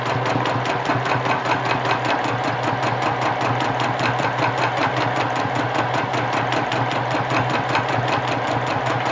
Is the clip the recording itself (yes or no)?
yes